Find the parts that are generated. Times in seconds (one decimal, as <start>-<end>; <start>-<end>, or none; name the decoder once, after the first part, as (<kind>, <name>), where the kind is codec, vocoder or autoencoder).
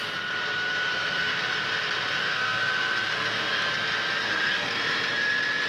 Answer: 0.9-1.5 (codec, SNAC); 2.2-3.7; 4.2-4.8